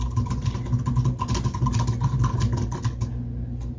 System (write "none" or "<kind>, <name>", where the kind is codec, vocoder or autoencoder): none